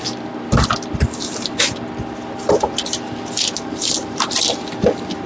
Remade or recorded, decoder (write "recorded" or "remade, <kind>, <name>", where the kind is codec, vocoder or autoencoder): recorded